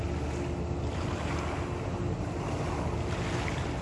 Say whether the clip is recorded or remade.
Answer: recorded